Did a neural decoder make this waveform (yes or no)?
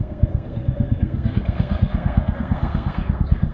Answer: yes